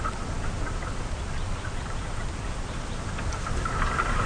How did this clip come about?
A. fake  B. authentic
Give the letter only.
B